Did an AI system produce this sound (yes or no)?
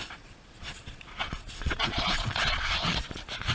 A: yes